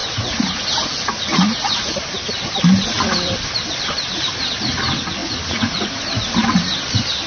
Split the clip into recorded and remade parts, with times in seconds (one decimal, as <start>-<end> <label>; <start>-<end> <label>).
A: 0.0-0.7 remade; 0.7-1.3 recorded; 1.3-2.0 remade; 2.0-5.2 recorded; 5.2-6.0 remade; 6.0-7.3 recorded